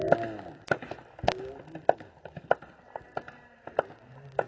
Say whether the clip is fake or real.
real